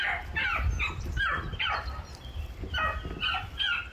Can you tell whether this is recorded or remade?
recorded